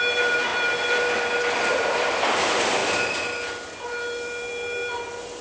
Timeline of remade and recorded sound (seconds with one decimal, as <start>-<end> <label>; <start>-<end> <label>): 0.0-5.4 recorded